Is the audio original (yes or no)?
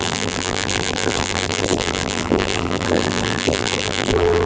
no